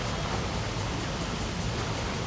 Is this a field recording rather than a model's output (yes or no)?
yes